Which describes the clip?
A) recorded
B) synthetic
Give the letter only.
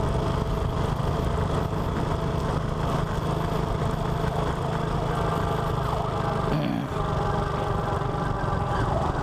A